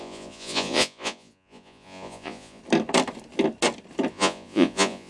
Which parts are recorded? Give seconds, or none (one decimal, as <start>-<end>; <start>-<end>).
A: 2.6-4.1